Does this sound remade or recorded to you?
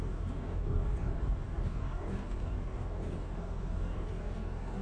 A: remade